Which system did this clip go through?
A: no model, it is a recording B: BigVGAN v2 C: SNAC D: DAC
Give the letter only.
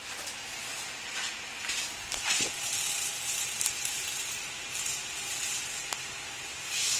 A